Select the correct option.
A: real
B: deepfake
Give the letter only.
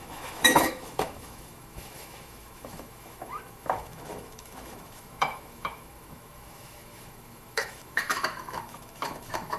B